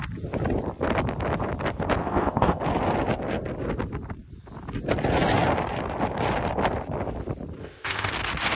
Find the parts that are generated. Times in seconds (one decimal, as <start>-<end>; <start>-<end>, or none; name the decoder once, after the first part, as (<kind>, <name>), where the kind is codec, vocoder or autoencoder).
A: 2.0-2.6 (codec, ZipCodec); 7.6-8.1